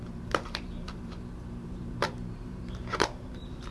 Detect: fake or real fake